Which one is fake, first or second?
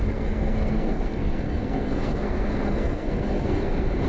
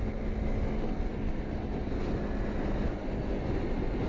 first